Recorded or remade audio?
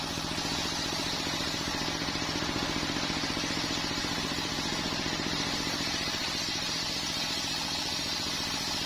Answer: remade